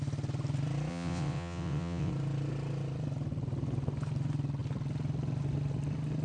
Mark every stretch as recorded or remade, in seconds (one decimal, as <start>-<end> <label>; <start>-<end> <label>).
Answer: 0.0-0.9 recorded; 0.9-2.1 remade; 2.1-6.2 recorded